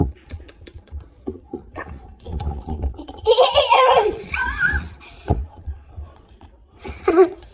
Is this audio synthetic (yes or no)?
yes